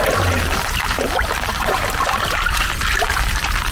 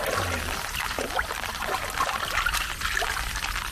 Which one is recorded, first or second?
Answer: second